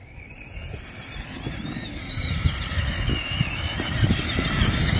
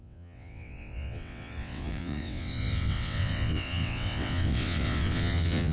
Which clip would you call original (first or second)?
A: first